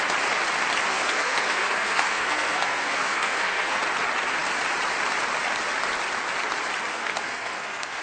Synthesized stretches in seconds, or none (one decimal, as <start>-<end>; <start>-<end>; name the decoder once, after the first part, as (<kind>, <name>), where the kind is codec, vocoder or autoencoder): 0.9-3.8 (codec, SNAC); 6.9-8.0